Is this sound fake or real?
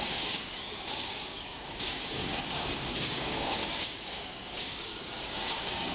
fake